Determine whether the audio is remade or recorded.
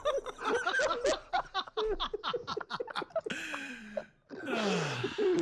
recorded